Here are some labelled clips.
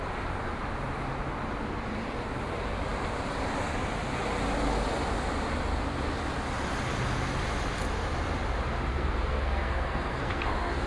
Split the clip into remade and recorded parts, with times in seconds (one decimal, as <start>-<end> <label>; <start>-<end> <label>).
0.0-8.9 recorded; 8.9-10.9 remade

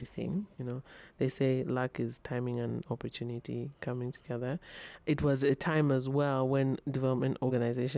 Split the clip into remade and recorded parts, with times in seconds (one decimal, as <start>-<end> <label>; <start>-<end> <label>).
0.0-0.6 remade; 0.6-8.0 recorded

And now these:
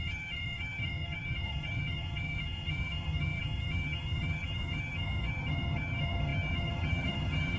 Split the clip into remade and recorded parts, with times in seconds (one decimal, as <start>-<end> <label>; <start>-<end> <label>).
0.0-7.6 remade

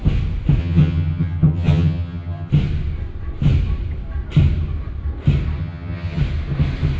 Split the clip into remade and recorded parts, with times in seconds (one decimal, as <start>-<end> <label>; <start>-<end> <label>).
0.0-0.6 recorded; 0.6-2.5 remade; 2.5-5.6 recorded; 5.6-6.2 remade; 6.2-7.0 recorded

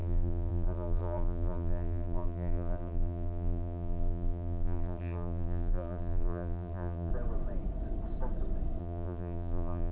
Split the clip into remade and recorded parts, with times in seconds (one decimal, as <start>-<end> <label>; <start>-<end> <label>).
0.0-7.1 remade; 7.1-8.8 recorded; 8.8-9.9 remade

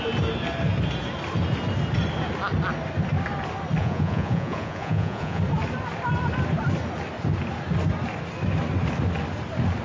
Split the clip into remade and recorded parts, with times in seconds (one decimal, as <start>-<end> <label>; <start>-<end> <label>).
0.0-3.8 recorded; 3.8-5.4 remade; 5.4-9.8 recorded

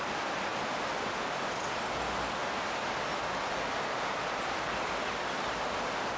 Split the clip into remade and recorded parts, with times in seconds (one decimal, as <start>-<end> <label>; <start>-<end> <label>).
0.0-6.2 recorded

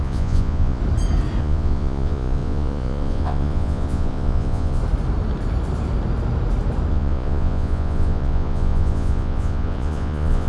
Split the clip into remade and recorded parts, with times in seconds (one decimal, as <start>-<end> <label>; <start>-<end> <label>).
0.0-0.8 remade; 0.8-1.4 recorded; 1.4-4.8 remade; 4.8-6.9 recorded; 6.9-10.5 remade